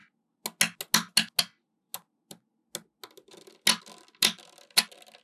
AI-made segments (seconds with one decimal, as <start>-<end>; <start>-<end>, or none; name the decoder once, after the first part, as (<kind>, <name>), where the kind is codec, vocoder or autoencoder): none